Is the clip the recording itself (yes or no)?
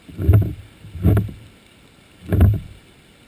yes